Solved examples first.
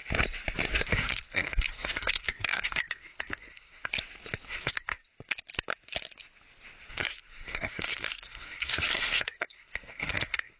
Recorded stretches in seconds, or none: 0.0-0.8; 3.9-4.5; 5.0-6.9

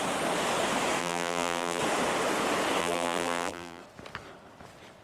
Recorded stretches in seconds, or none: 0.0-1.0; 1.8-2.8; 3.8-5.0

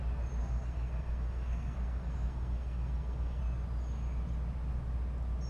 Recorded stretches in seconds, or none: 0.0-0.4; 3.4-5.5

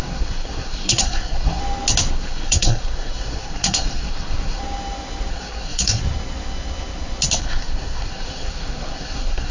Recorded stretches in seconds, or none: 1.6-2.1; 4.6-5.3; 6.0-7.4